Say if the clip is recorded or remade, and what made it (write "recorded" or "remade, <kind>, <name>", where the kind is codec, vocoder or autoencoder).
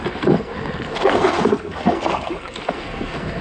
remade, codec, SNAC